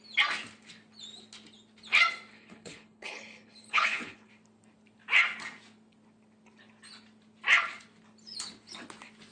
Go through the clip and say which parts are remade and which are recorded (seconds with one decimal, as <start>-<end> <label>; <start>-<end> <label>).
0.0-2.3 recorded; 2.3-4.3 remade; 4.3-9.3 recorded